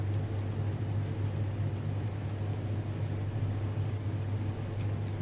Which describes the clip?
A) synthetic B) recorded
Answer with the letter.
B